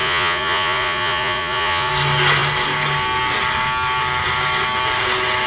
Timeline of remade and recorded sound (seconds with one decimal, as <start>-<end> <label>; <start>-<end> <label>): 0.0-1.9 remade; 1.9-5.5 recorded